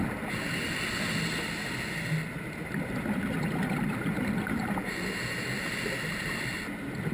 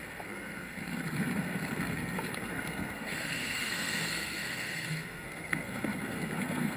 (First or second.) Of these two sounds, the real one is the first